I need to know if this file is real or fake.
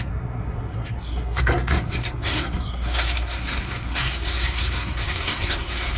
fake